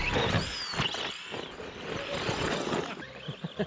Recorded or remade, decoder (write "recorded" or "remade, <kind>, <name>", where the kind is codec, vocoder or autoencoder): recorded